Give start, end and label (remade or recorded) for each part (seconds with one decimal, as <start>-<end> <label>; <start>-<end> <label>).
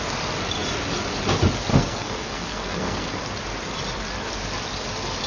0.0-1.7 recorded; 1.7-3.2 remade; 3.2-5.3 recorded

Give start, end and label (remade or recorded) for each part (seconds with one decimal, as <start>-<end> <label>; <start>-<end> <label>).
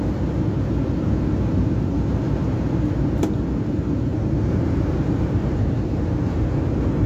0.0-7.1 recorded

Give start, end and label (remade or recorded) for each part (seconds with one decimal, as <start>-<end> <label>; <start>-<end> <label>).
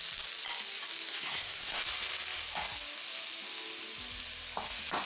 0.0-1.1 recorded; 1.1-1.8 remade; 1.8-5.1 recorded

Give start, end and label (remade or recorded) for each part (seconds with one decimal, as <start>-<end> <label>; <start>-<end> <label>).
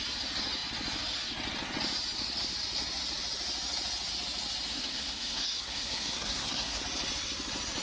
0.0-4.7 recorded; 4.7-6.8 remade; 6.8-7.8 recorded